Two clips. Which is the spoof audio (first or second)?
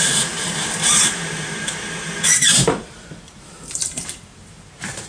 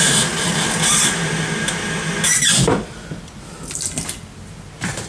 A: first